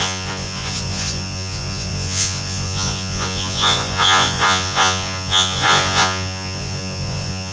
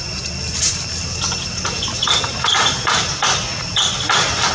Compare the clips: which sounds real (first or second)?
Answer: second